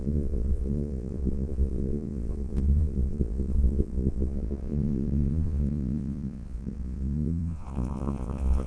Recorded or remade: remade